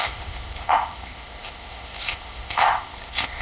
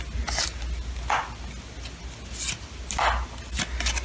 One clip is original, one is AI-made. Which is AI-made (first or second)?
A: first